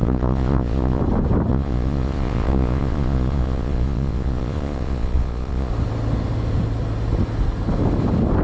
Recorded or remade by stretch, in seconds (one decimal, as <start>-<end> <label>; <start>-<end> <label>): 0.0-1.0 remade; 1.0-1.5 recorded; 1.5-5.7 remade; 5.7-8.4 recorded

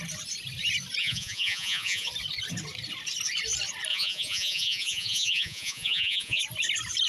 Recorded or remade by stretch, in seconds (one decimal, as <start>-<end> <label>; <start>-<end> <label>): 0.0-1.0 recorded; 1.0-2.1 remade; 2.1-3.9 recorded; 3.9-6.4 remade; 6.4-7.1 recorded

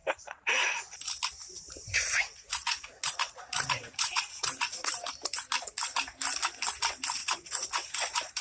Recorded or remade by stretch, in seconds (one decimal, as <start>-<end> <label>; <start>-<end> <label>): 0.0-0.8 remade; 0.8-1.4 recorded; 1.4-4.9 remade; 4.9-7.2 recorded; 7.2-8.4 remade